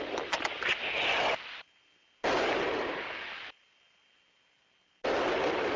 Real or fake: real